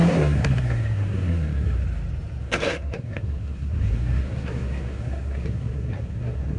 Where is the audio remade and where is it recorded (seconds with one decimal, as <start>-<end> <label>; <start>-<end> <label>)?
0.0-1.8 remade; 1.8-2.4 recorded; 2.4-6.6 remade